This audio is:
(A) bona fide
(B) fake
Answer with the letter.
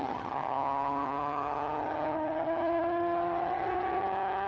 B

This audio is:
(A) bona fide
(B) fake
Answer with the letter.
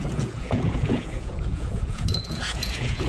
B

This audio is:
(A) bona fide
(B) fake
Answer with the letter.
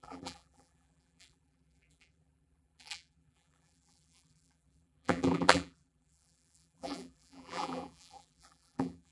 B